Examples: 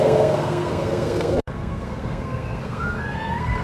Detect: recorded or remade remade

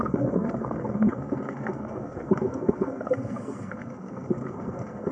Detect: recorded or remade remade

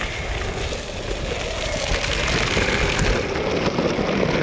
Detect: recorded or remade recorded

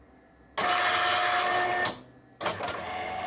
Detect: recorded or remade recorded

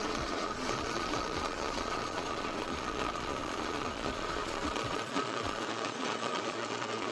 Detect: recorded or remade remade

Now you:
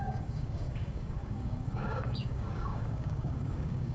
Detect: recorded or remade remade